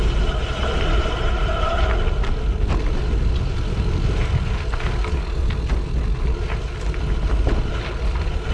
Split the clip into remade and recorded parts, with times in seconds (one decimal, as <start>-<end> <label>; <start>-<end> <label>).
0.0-0.4 recorded; 0.4-2.3 remade; 2.3-8.5 recorded